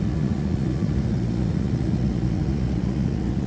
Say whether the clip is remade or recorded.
remade